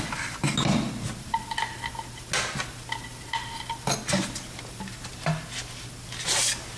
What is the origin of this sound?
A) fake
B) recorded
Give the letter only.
B